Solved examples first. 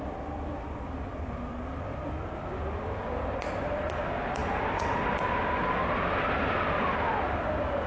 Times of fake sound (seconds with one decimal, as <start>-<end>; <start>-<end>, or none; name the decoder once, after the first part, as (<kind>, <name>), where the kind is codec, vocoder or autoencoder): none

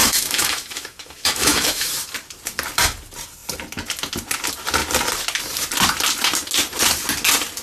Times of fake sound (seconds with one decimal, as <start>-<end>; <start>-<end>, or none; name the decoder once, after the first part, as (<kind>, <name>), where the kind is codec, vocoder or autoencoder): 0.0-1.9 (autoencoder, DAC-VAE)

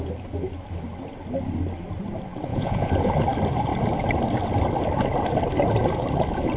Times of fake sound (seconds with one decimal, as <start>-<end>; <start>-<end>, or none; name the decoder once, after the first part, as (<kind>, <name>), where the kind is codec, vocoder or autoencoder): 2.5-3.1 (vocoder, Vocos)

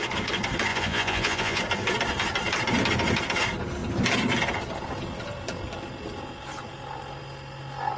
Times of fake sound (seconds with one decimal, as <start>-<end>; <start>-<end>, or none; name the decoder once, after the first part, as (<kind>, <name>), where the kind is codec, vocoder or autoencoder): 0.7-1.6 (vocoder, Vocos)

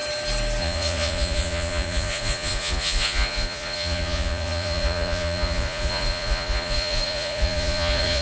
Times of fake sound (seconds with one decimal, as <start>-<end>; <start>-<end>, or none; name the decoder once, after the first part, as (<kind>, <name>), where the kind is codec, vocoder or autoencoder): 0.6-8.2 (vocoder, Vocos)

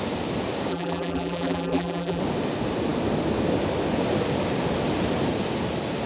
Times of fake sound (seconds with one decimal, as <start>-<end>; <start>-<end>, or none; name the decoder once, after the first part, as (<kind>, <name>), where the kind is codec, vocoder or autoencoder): 0.7-2.2 (vocoder, BigVGAN v2)

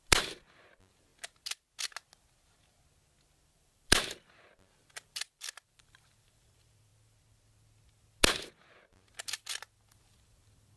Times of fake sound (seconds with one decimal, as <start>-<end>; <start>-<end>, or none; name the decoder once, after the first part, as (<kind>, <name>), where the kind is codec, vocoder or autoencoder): 0.0-1.1 (vocoder, BigVGAN v2); 3.5-6.9; 9.1-10.8